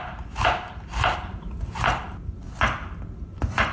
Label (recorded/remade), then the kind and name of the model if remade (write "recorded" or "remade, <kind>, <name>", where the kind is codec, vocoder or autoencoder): recorded